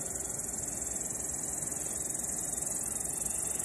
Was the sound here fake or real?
real